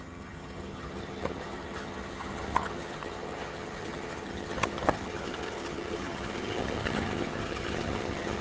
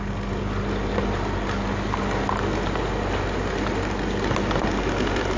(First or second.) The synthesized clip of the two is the first